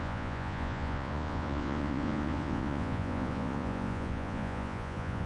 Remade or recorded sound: remade